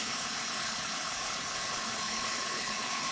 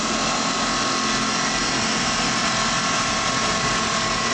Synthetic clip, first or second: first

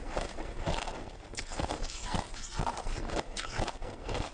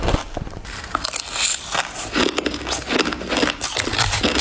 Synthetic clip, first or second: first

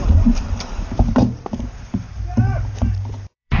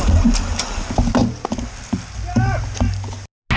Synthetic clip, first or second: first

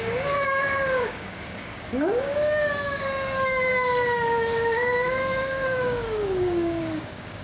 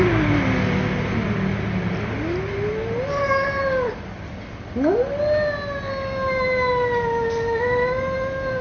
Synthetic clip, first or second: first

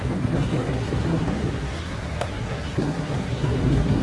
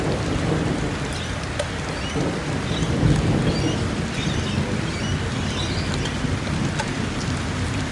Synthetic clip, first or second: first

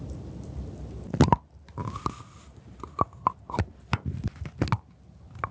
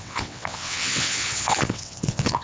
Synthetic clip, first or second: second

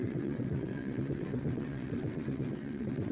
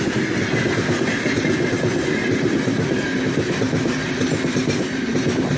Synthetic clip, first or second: first